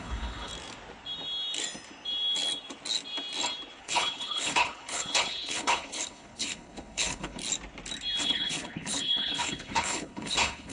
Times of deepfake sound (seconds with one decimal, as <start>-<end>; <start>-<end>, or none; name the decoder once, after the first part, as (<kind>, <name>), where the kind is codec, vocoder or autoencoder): 0.0-0.5 (codec, HILCodec); 3.8-7.4; 8.2-10.7